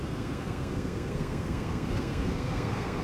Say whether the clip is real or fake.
fake